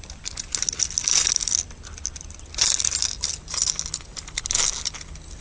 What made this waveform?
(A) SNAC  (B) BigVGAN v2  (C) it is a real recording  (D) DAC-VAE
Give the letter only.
C